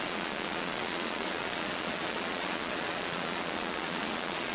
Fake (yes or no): yes